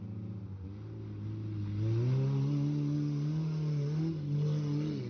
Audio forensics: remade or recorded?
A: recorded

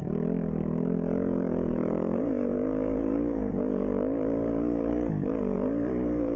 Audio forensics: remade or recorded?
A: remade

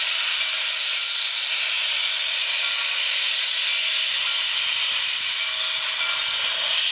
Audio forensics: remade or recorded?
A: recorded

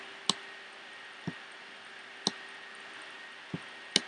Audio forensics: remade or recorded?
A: recorded